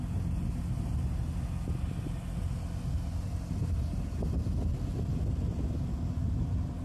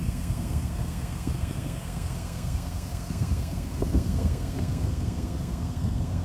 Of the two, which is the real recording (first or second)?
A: first